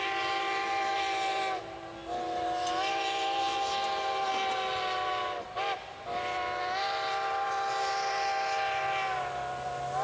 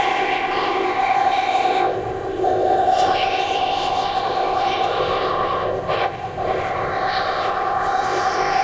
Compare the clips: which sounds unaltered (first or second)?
first